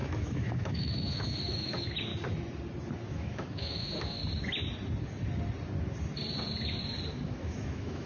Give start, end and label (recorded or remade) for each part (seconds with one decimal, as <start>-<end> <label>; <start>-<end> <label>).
0.0-2.1 remade; 2.1-3.1 recorded; 3.1-4.2 remade; 4.2-7.1 recorded; 7.1-8.1 remade